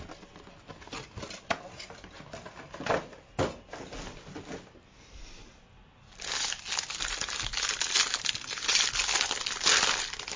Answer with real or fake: real